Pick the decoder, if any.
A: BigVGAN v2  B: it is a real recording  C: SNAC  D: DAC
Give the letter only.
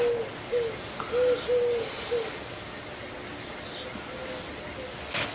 B